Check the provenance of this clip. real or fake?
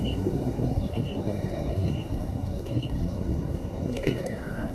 fake